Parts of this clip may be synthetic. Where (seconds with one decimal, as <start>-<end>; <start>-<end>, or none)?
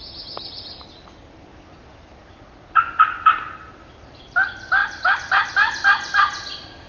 2.2-2.8